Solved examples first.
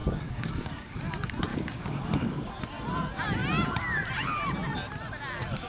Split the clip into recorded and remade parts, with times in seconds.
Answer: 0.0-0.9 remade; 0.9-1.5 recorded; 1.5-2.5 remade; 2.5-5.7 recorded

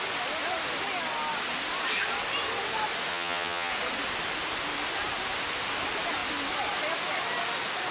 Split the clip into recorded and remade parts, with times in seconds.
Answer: 0.0-3.1 recorded; 3.1-3.7 remade; 3.7-7.9 recorded